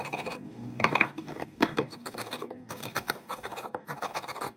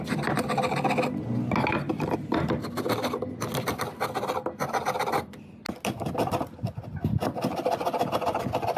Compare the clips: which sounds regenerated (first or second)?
first